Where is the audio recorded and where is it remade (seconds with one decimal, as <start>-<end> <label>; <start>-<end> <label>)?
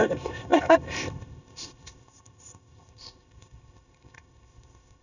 0.0-5.0 remade